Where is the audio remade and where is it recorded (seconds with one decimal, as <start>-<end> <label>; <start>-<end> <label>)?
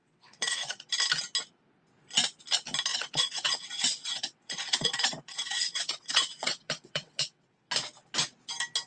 0.0-0.9 remade; 0.9-2.9 recorded; 2.9-7.7 remade; 7.7-8.9 recorded